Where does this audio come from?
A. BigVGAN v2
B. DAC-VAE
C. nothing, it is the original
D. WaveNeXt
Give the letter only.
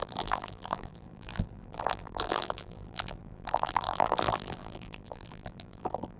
A